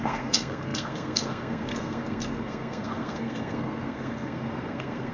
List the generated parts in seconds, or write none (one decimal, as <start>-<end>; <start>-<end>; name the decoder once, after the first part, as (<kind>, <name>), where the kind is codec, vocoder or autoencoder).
0.0-5.1 (codec, SNAC)